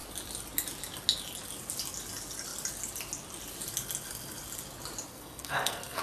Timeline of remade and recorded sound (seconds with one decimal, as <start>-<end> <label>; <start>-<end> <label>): 0.0-5.1 recorded; 5.1-6.0 remade